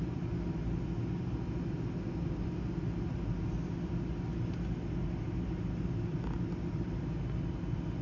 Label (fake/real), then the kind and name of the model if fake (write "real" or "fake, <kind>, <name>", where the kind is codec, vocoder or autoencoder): real